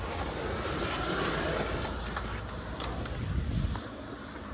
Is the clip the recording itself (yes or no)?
yes